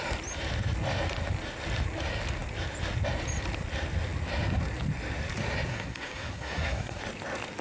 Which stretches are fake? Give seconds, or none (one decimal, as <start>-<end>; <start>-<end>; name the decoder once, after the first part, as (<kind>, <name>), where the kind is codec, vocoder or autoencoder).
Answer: 5.7-7.0 (codec, SNAC)